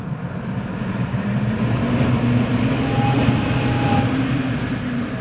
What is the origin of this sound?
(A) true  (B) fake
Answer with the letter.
A